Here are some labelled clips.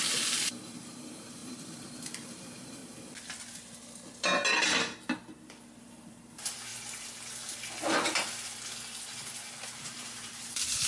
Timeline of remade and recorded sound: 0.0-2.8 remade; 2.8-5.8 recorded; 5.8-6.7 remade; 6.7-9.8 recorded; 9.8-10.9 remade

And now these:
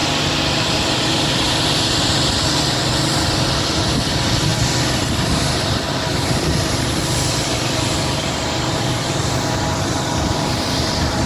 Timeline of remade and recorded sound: 0.0-3.6 recorded; 3.6-11.3 remade

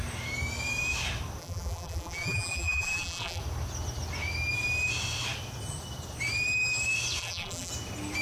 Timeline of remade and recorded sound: 0.0-1.4 recorded; 1.4-3.4 remade; 3.4-7.2 recorded; 7.2-7.7 remade; 7.7-8.2 recorded

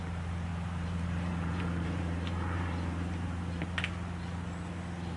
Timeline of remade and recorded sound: 0.0-0.5 recorded; 0.5-3.6 remade; 3.6-5.2 recorded

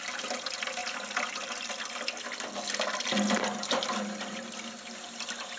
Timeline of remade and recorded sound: 0.0-5.6 recorded

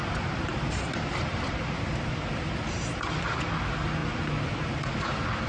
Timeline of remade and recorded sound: 0.0-5.5 recorded

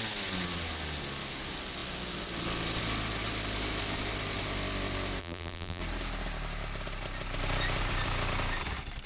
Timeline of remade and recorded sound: 0.0-5.2 recorded; 5.2-5.8 remade; 5.8-9.1 recorded